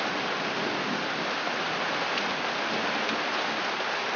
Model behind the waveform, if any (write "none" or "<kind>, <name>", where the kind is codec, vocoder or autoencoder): none